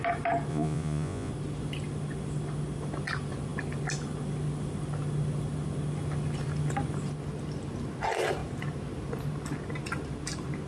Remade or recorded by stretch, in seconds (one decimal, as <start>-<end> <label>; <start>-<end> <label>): 0.0-0.5 recorded; 0.5-1.3 remade; 1.3-10.7 recorded